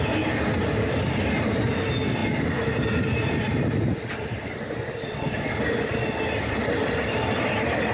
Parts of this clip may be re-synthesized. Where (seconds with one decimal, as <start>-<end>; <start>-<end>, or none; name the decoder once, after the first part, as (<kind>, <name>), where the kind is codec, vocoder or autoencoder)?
none